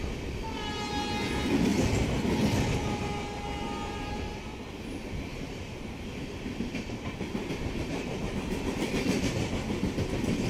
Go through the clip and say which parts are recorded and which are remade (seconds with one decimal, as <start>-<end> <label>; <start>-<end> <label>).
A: 0.0-5.3 recorded; 5.3-9.5 remade; 9.5-10.5 recorded

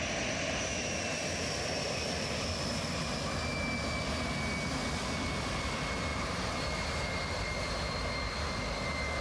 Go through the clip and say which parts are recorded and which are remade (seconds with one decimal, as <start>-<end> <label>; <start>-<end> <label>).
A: 0.0-6.1 recorded; 6.1-6.9 remade; 6.9-9.2 recorded

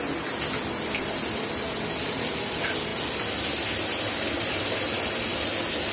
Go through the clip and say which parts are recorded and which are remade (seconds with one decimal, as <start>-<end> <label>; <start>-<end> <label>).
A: 0.0-5.9 recorded

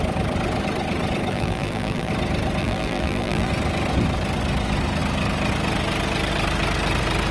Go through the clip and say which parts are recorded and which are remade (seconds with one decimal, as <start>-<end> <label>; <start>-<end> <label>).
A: 0.0-1.3 recorded; 1.3-2.1 remade; 2.1-2.6 recorded; 2.6-3.5 remade; 3.5-7.3 recorded

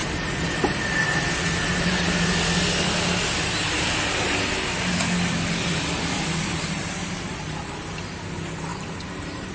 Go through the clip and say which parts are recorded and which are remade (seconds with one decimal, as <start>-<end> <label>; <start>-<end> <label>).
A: 0.0-6.8 recorded; 6.8-7.4 remade; 7.4-8.7 recorded; 8.7-9.5 remade

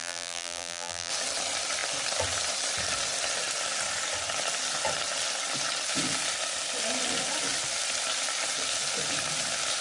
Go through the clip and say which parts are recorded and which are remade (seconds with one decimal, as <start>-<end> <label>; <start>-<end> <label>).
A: 0.0-1.1 remade; 1.1-9.8 recorded